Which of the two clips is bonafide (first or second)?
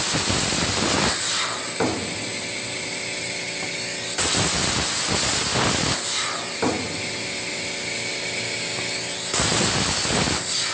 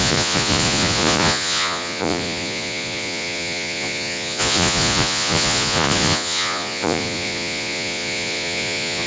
first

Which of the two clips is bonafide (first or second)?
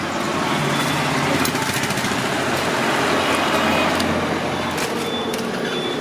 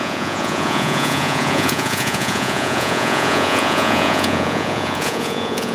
first